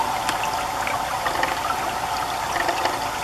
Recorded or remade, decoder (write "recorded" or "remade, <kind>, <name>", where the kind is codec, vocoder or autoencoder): recorded